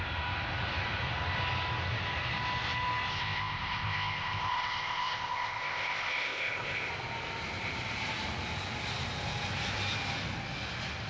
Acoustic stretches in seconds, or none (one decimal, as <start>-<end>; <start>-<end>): 0.0-3.1; 6.9-11.1